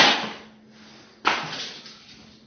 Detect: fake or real real